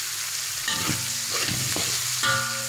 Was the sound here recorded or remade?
recorded